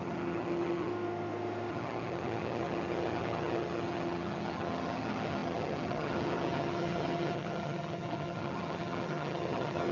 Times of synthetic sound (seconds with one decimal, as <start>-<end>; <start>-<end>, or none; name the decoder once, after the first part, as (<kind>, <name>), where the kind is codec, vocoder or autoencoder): 0.0-0.9 (vocoder, HiFi-GAN); 1.7-9.9